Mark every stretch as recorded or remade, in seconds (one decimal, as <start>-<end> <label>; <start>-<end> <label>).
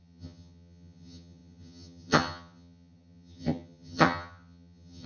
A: 0.0-5.1 remade